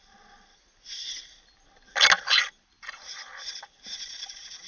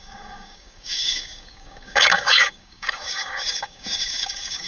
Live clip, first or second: first